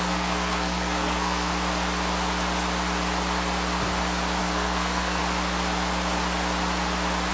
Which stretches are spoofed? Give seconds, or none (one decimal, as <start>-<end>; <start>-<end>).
0.0-1.5; 4.4-5.2